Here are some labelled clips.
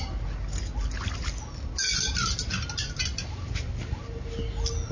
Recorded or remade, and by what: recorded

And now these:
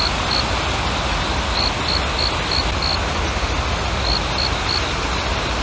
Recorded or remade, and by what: recorded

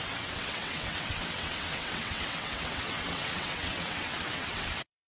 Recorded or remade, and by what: remade, vocoder, WaveNeXt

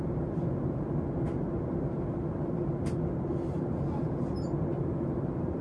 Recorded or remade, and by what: recorded